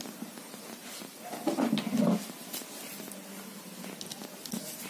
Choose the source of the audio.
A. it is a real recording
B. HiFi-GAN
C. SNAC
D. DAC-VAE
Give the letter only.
A